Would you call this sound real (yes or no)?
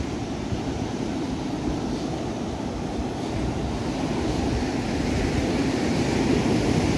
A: yes